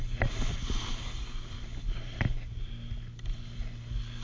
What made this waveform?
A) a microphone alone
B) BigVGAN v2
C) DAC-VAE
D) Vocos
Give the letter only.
A